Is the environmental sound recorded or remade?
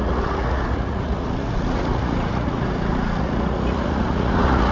remade